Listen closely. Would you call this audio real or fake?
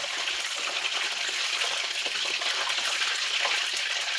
real